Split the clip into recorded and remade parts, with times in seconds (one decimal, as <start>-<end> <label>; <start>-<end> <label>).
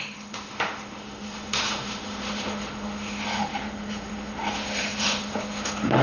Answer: 0.0-6.0 remade